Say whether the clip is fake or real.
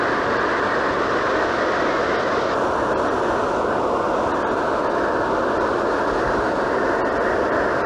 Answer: real